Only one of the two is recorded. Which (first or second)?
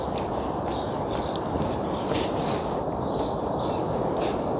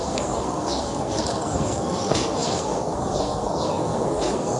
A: first